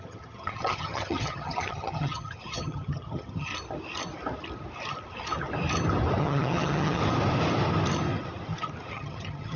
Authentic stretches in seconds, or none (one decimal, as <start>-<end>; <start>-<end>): 3.5-6.2; 7.0-8.9